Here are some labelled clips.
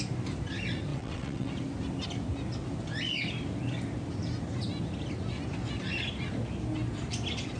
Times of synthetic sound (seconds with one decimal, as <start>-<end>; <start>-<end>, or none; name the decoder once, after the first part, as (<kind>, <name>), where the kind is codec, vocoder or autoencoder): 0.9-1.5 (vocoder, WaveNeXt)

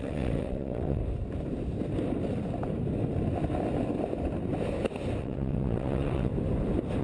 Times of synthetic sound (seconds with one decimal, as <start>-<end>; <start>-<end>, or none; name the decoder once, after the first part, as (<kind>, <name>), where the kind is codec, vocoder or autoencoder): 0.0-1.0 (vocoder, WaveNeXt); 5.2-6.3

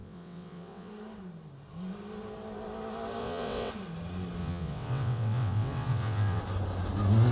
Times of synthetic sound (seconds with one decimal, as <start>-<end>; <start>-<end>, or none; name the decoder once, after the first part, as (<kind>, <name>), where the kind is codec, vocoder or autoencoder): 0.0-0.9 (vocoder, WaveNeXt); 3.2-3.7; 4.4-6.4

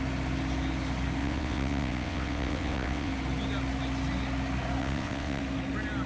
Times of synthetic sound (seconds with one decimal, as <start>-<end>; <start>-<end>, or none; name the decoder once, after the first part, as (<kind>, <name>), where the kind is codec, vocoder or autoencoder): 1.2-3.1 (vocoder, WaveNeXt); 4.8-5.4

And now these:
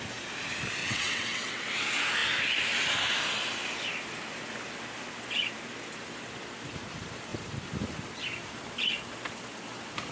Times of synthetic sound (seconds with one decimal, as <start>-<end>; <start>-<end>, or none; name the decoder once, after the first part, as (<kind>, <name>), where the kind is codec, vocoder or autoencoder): 0.8-1.6 (vocoder, WaveNeXt)